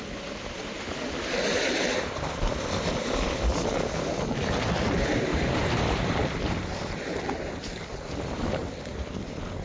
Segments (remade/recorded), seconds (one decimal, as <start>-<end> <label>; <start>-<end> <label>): 0.0-5.3 recorded; 5.3-6.4 remade; 6.4-8.6 recorded; 8.6-9.2 remade; 9.2-9.6 recorded